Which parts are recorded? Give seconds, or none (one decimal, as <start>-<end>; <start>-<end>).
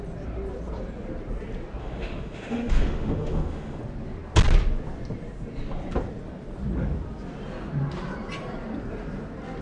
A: 0.0-1.8; 3.8-9.6